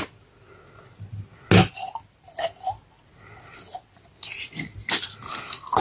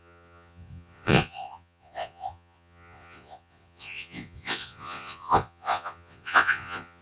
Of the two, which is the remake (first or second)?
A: second